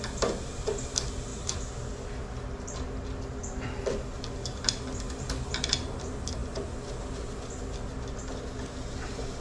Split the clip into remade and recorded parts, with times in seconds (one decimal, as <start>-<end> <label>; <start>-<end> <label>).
0.0-9.4 recorded